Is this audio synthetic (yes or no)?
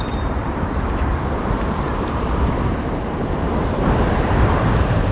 yes